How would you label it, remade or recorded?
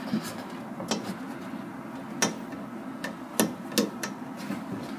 recorded